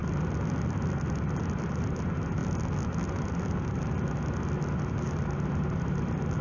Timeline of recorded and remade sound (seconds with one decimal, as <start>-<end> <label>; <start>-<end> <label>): 0.0-1.4 recorded; 1.4-2.4 remade; 2.4-4.8 recorded; 4.8-6.4 remade